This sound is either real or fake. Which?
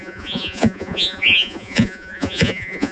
fake